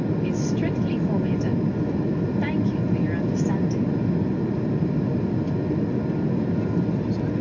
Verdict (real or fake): real